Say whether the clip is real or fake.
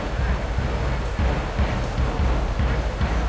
real